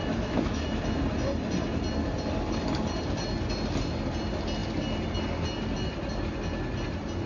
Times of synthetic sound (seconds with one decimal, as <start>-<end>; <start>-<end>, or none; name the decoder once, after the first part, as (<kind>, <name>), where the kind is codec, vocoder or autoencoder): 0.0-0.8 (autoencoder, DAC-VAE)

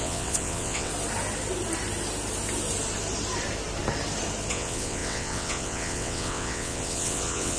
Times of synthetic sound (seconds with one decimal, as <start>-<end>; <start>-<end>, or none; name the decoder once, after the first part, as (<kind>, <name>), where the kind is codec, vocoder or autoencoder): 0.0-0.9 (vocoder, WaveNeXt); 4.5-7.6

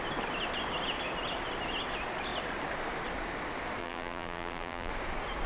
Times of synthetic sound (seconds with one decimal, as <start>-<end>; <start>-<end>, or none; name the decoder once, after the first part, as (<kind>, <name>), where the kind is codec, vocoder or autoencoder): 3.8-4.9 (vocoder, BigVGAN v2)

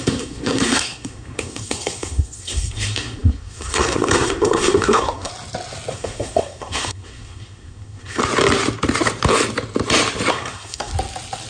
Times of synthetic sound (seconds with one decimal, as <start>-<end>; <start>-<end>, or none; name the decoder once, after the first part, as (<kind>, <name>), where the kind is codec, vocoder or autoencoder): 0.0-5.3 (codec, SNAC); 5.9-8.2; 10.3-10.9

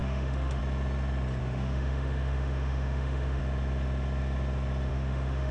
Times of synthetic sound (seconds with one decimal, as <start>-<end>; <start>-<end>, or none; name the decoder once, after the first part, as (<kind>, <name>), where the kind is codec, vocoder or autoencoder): 0.0-0.6 (autoencoder, DAC-VAE); 1.4-3.4; 4.9-5.5

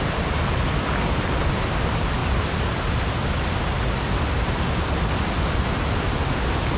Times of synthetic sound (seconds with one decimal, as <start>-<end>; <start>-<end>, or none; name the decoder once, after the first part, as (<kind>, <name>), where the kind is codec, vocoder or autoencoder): none